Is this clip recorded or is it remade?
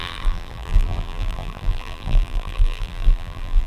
remade